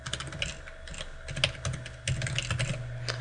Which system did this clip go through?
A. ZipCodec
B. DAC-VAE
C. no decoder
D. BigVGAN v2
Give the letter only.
C